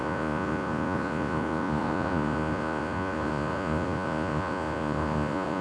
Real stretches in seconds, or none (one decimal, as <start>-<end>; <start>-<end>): none